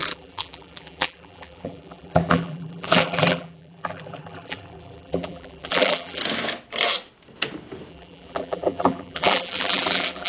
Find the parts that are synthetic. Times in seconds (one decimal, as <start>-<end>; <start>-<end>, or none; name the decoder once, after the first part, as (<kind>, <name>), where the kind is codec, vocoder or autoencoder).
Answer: 0.0-6.2 (vocoder, BigVGAN v2); 7.9-10.3